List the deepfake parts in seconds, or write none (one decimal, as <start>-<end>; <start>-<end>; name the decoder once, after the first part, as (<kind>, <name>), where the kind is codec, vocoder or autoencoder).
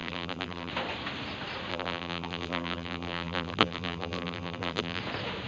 0.0-0.7 (vocoder, BigVGAN v2); 1.7-5.0